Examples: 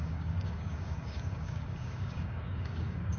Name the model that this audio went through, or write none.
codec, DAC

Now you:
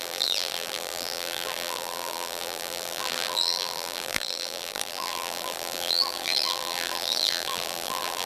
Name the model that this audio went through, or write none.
vocoder, BigVGAN v2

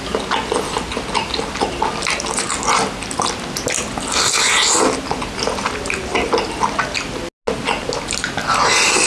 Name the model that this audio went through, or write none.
none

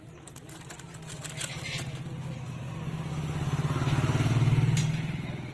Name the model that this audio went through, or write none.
none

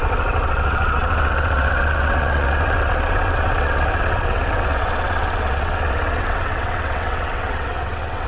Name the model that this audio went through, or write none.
vocoder, WaveNeXt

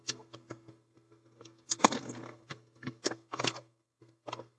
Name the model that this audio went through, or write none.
codec, SNAC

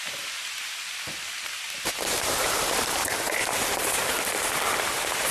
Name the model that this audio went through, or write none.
vocoder, BigVGAN v2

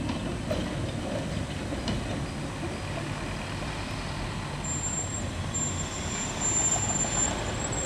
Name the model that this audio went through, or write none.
none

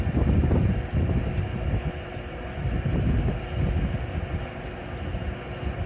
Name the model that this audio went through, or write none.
none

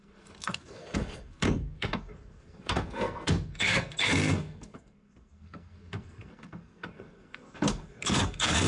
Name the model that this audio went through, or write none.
codec, SNAC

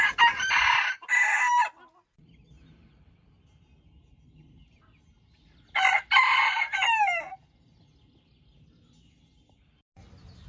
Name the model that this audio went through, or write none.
none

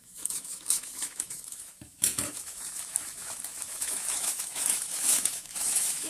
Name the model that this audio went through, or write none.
autoencoder, DAC-VAE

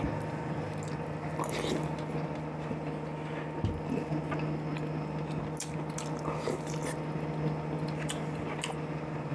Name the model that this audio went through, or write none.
none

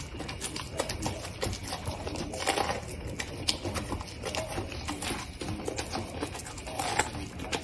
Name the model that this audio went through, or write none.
none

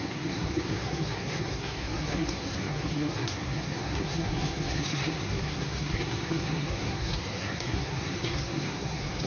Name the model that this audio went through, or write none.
codec, SNAC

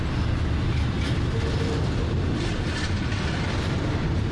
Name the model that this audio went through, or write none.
none